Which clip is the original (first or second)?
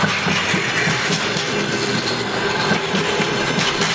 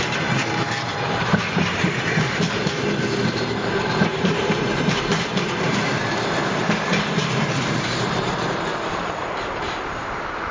first